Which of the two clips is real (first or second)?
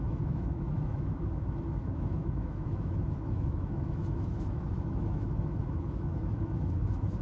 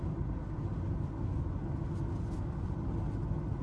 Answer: second